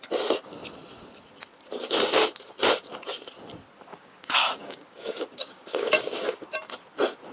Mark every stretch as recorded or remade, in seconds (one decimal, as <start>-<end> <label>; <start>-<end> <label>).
0.0-3.9 recorded; 3.9-6.5 remade; 6.5-7.3 recorded